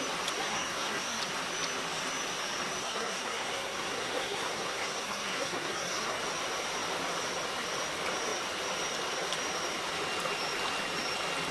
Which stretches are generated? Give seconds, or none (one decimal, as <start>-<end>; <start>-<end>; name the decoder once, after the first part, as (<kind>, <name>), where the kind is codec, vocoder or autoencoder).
0.5-1.2 (codec, SNAC); 2.8-6.2